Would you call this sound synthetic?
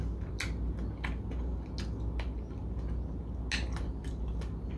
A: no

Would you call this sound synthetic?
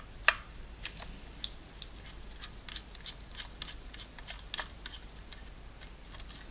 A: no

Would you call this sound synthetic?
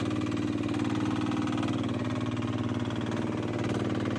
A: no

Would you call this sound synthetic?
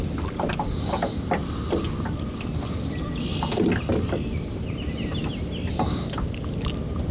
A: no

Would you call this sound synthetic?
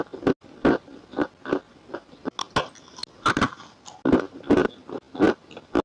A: no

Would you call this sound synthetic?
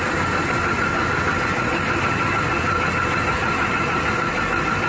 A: no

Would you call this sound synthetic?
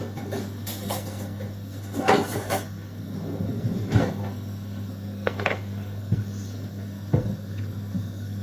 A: yes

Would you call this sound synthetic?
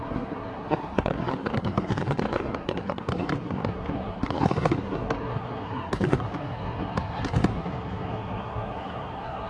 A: yes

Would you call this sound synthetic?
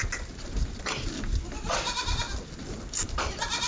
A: no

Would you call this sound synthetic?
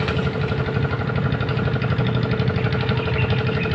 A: no